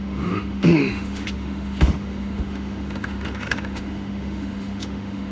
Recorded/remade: remade